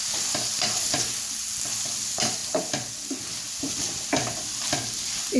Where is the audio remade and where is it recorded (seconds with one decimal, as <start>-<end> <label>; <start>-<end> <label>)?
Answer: 0.0-5.4 recorded